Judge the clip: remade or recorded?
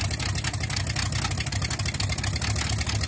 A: recorded